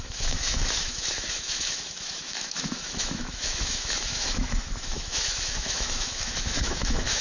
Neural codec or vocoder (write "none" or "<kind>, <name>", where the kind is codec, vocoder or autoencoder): autoencoder, DAC-VAE